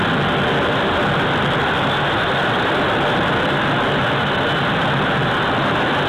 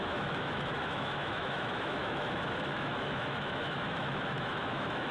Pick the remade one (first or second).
second